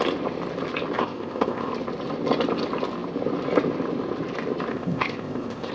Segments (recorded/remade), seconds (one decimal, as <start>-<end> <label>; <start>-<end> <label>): 0.0-1.0 recorded; 1.0-1.7 remade; 1.7-4.7 recorded; 4.7-5.7 remade